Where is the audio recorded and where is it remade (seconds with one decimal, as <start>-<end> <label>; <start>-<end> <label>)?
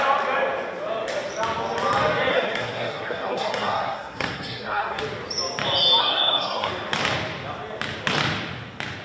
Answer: 0.0-2.3 recorded; 2.3-5.0 remade; 5.0-6.0 recorded; 6.0-6.7 remade; 6.7-9.0 recorded